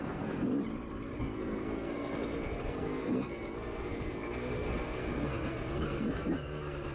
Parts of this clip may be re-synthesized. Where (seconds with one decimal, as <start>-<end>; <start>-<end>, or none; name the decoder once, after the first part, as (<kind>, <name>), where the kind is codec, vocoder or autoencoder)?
0.0-0.5 (codec, SNAC); 1.2-6.9